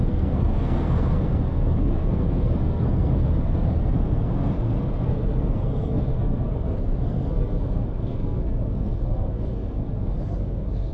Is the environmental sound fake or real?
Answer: fake